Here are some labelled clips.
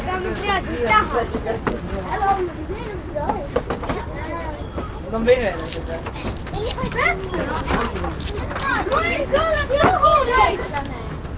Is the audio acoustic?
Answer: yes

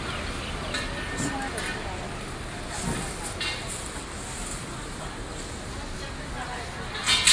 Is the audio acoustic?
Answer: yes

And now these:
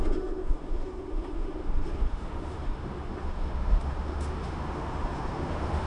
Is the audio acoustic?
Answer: no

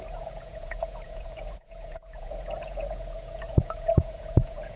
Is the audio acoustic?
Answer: no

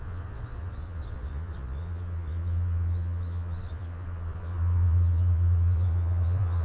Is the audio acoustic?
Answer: no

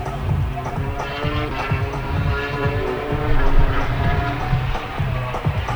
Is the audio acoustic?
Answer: no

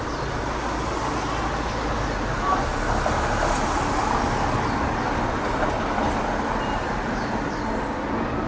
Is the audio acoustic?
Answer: yes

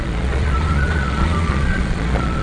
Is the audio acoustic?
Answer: no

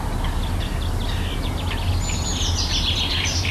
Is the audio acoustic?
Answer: yes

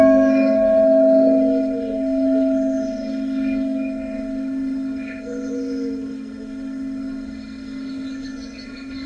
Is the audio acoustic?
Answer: no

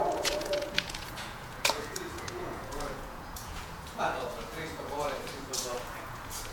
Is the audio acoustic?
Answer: no